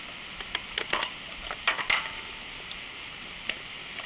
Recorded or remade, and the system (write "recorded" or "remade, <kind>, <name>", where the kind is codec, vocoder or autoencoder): recorded